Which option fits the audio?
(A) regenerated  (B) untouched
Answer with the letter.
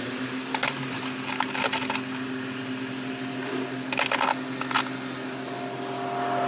B